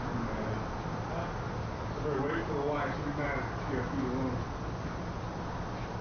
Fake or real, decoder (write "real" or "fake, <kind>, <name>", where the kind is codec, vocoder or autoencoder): real